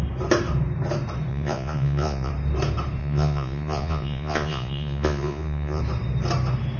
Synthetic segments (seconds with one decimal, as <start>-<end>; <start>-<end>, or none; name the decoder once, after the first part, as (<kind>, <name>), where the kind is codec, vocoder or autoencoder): 1.3-2.3 (vocoder, Vocos); 3.0-5.8